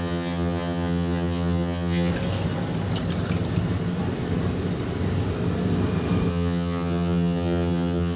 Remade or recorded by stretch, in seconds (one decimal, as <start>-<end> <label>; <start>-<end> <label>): 0.0-2.1 remade; 2.1-6.3 recorded; 6.3-8.2 remade